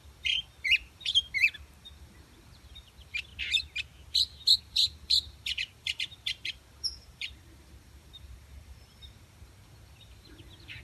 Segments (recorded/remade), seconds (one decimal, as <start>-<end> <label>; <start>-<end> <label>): 0.0-3.3 remade; 3.3-4.6 recorded; 4.6-10.8 remade